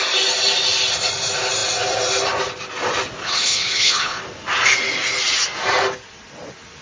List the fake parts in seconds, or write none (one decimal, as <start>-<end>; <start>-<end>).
3.2-4.2